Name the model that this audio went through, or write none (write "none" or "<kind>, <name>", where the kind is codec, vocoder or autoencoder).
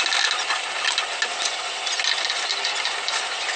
none